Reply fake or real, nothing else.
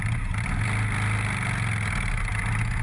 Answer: real